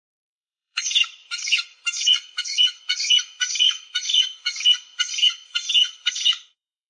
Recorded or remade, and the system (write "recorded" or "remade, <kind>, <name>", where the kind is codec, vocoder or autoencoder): remade, codec, SNAC